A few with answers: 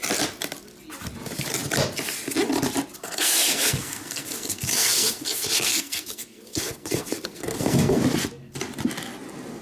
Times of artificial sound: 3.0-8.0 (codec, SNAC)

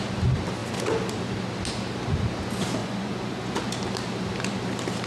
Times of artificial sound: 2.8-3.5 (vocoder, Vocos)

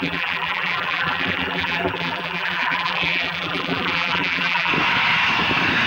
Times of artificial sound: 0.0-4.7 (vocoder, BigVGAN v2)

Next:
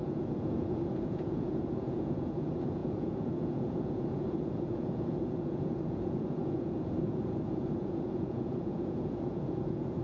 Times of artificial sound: 0.0-10.0 (vocoder, Vocos)

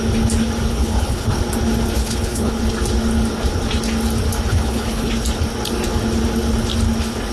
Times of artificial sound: 0.7-1.4 (codec, HILCodec); 2.0-2.6; 4.5-5.1

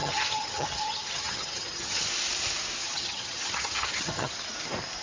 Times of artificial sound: 0.0-2.1 (vocoder, HiFi-GAN); 2.8-4.3